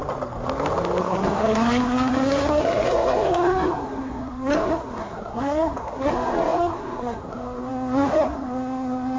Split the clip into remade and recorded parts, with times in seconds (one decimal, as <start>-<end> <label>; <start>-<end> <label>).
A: 0.0-1.0 recorded; 1.0-9.2 remade

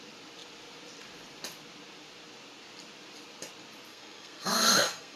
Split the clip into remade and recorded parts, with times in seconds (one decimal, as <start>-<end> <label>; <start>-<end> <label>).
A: 0.0-3.9 recorded; 3.9-5.2 remade

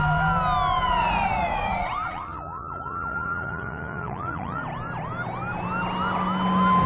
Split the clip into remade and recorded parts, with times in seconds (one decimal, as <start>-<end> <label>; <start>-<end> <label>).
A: 0.0-0.9 recorded; 0.9-4.6 remade; 4.6-6.9 recorded

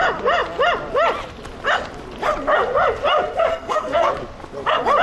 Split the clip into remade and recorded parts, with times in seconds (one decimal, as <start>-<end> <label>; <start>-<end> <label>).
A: 0.0-3.5 recorded; 3.5-4.1 remade; 4.1-5.0 recorded

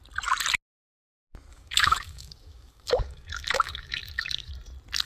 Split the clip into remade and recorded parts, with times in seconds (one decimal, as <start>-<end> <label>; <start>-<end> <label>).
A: 0.0-1.5 recorded; 1.5-4.5 remade; 4.5-5.1 recorded

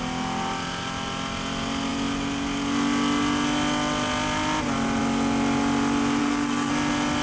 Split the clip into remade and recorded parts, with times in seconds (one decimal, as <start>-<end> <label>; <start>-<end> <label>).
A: 0.0-6.2 recorded; 6.2-6.7 remade; 6.7-7.2 recorded